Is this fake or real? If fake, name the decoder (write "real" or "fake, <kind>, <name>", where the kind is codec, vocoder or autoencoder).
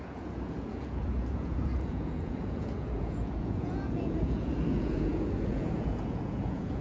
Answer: fake, vocoder, Vocos